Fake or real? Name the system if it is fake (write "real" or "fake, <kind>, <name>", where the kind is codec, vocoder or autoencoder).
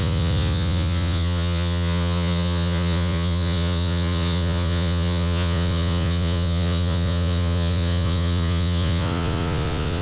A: fake, vocoder, Vocos